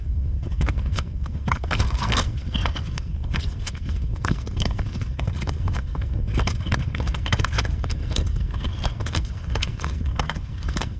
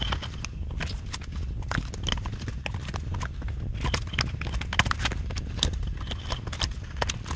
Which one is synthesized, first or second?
first